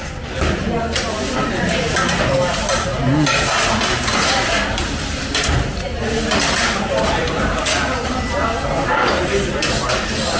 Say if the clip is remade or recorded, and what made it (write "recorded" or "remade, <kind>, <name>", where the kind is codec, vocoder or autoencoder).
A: recorded